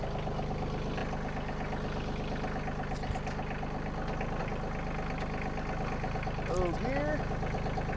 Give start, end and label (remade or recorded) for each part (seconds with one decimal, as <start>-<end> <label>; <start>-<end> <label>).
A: 0.0-8.0 recorded